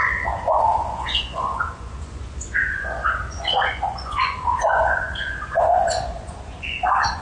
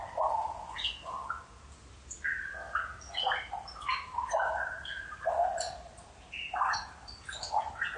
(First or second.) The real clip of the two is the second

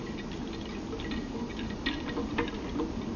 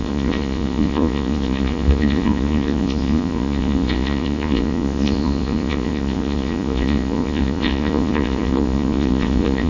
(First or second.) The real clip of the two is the first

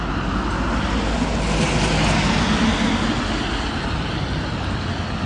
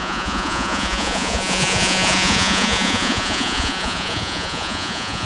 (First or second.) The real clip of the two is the first